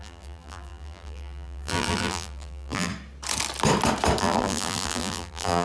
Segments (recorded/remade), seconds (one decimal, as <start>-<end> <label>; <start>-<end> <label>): 0.0-2.9 remade; 2.9-4.2 recorded; 4.2-5.6 remade